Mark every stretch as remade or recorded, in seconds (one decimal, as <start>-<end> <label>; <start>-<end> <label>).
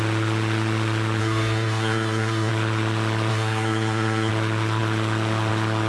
0.0-1.2 recorded; 1.2-2.5 remade; 2.5-3.3 recorded; 3.3-4.3 remade; 4.3-5.9 recorded